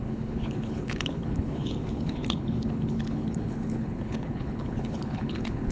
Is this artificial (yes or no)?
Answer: yes